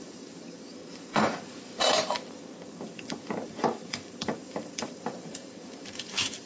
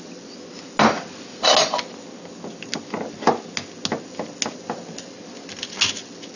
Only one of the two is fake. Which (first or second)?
first